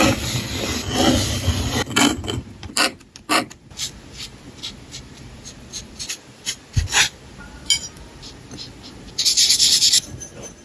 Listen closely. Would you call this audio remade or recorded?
recorded